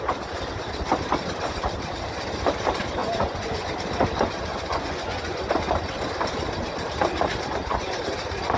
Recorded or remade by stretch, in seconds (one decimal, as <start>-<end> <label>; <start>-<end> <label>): 0.0-3.0 recorded; 3.0-3.7 remade; 3.7-4.5 recorded; 4.5-5.4 remade; 5.4-8.6 recorded